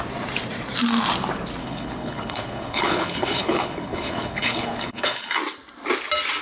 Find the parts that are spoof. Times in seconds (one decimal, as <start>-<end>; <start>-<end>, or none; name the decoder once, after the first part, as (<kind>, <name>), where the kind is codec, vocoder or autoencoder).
1.6-5.4 (codec, HILCodec)